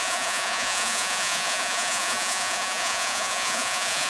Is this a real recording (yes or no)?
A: no